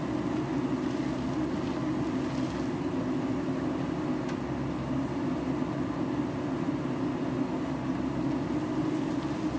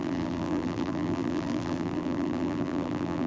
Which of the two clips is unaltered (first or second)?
first